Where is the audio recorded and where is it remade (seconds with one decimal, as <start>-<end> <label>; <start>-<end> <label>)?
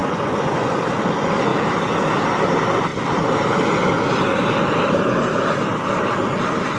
0.0-0.8 remade; 0.8-6.8 recorded